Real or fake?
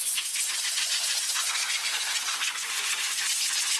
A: fake